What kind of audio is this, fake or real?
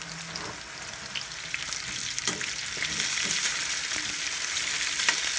real